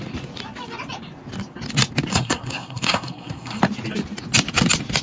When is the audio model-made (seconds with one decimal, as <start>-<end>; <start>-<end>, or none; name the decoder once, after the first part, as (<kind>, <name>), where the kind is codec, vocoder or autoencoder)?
2.1-3.6 (codec, SNAC)